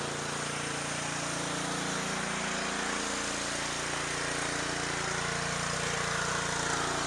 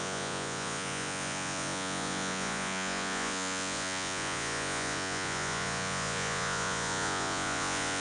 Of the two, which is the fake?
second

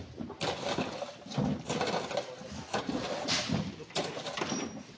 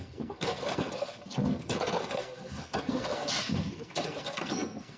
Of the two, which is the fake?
second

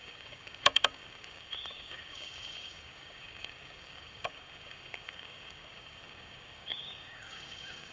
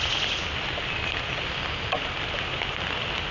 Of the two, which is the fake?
first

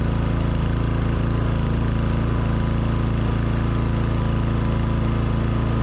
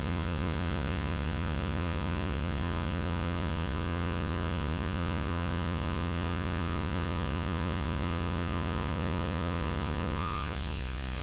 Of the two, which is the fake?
second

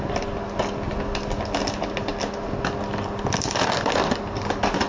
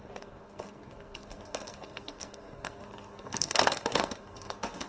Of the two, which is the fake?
second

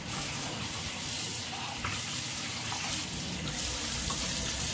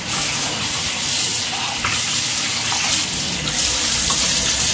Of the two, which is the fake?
first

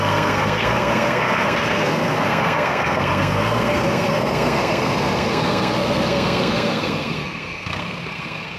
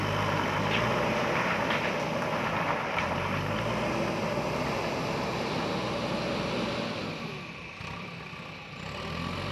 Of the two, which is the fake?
first